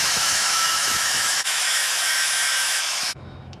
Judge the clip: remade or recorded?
remade